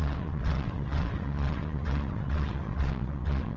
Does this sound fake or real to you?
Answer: fake